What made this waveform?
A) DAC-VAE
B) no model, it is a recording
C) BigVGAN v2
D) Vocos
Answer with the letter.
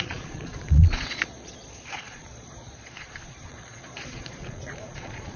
D